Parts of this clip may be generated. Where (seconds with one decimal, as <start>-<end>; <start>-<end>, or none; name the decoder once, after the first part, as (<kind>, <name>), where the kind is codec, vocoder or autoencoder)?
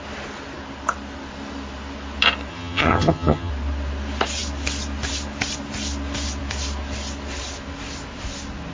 2.5-3.5 (vocoder, HiFi-GAN)